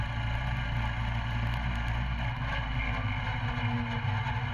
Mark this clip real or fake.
real